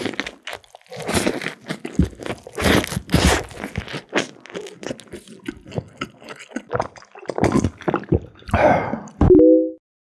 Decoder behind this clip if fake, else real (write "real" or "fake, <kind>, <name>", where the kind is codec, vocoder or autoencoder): real